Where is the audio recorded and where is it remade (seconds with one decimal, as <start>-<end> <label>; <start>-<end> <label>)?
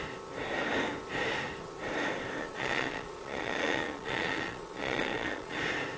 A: 0.0-2.4 recorded; 2.4-5.6 remade; 5.6-6.0 recorded